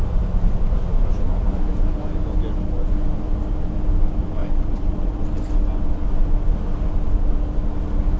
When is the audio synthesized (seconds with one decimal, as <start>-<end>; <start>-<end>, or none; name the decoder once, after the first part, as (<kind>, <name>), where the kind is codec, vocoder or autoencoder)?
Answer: 4.4-5.2 (vocoder, Vocos)